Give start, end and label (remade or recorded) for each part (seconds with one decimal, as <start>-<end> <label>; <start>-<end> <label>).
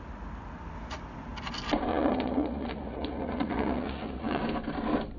0.0-1.9 recorded; 1.9-4.4 remade; 4.4-5.2 recorded